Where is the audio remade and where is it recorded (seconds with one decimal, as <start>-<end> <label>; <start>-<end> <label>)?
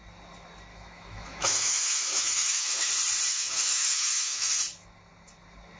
0.0-0.7 recorded; 0.7-2.9 remade; 2.9-3.3 recorded; 3.3-4.6 remade; 4.6-5.8 recorded